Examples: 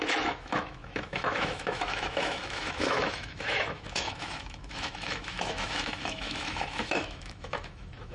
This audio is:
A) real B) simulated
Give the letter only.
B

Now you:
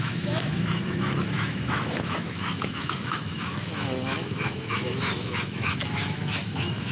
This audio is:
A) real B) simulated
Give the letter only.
B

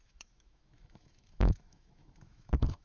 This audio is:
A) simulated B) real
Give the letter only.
A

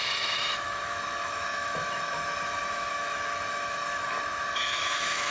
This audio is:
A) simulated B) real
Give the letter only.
A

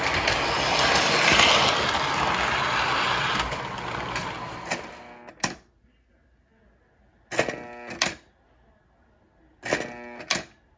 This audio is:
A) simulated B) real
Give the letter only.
B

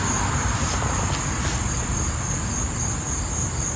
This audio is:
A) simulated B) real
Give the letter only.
B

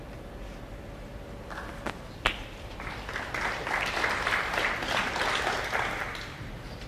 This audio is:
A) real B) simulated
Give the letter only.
A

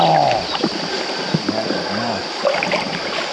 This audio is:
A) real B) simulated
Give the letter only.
A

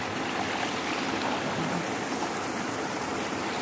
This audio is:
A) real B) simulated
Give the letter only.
A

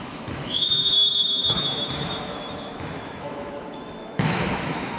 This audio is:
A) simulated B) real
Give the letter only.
A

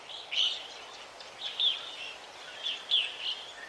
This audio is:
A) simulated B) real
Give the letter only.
B